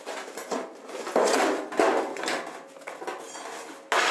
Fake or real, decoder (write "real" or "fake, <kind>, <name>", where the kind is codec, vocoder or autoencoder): real